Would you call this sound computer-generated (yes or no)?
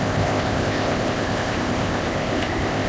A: yes